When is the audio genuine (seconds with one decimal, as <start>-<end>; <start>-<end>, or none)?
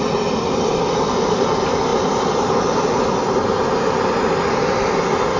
0.0-5.4